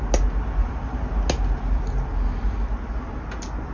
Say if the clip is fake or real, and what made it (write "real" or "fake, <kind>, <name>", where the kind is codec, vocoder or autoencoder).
real